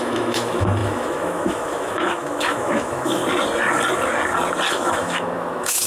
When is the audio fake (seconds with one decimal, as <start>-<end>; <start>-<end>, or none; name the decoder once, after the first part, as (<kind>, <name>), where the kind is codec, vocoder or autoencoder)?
0.0-3.2 (autoencoder, DAC-VAE); 4.7-5.9